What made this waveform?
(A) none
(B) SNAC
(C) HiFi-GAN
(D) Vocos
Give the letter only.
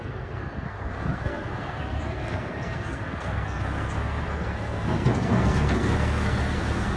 B